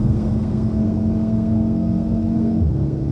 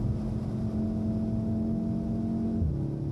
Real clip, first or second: second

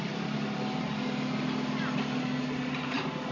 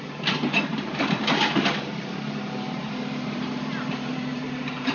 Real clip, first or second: first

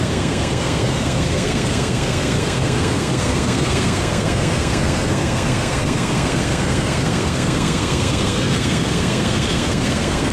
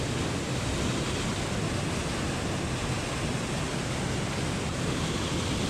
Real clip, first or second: second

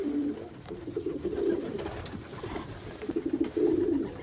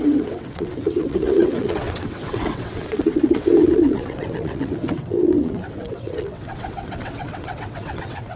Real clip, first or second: first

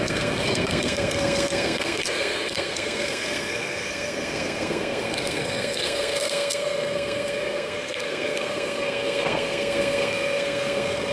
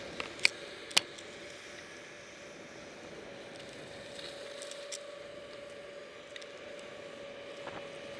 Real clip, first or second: second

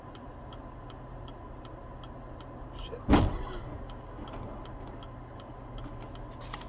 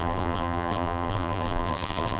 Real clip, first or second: first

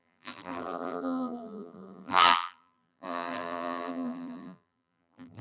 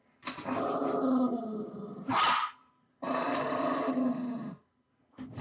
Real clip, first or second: second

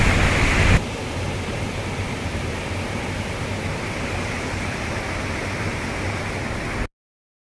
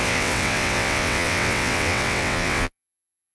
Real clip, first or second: first